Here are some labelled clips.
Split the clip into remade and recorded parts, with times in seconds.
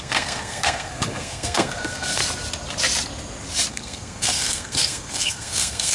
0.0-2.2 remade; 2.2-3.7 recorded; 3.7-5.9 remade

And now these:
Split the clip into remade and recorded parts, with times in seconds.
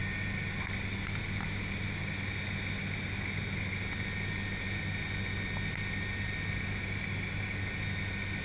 0.0-8.4 recorded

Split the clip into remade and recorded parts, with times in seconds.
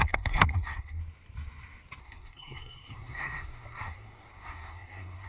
0.0-1.0 remade; 1.0-2.0 recorded; 2.0-5.3 remade